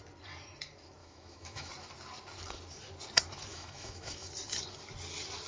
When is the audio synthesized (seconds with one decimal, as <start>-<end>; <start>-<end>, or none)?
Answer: 1.0-1.7; 3.5-4.3